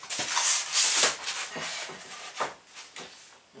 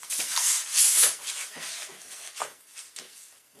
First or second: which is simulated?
second